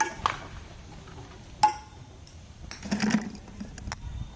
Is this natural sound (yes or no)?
yes